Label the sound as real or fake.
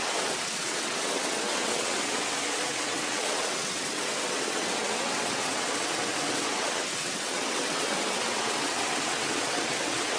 fake